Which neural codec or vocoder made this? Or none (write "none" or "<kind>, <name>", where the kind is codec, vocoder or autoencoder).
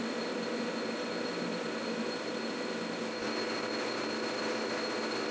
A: none